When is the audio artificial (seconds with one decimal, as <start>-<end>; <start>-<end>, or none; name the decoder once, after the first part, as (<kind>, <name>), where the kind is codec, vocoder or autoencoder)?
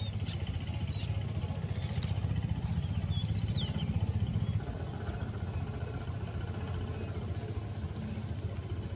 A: none